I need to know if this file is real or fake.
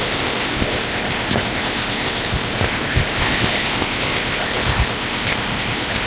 fake